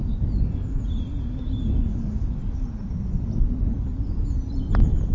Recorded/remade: recorded